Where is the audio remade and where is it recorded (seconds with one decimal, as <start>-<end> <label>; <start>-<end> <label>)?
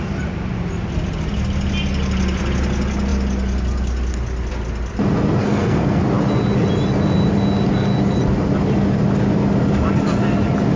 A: 0.0-5.4 recorded; 5.4-6.0 remade; 6.0-10.8 recorded